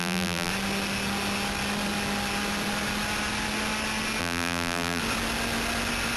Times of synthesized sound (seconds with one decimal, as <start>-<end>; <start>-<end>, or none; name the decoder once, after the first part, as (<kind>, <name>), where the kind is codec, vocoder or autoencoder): 0.0-0.5 (vocoder, BigVGAN v2); 4.2-5.0